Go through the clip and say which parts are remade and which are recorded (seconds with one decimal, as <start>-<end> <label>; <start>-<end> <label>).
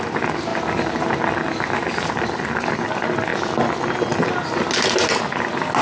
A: 0.0-5.8 recorded